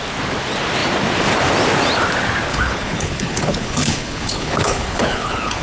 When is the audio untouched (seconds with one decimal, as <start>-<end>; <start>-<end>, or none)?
0.0-2.5